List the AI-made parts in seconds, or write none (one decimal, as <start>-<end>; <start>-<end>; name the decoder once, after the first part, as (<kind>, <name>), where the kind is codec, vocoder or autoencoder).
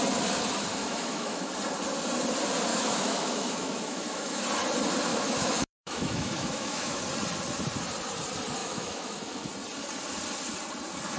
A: 0.8-1.5 (autoencoder, DAC-VAE); 2.7-4.4; 5.1-7.0; 8.6-9.5